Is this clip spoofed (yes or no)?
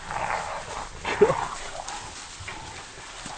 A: no